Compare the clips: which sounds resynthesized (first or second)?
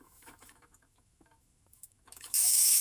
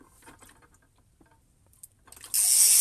first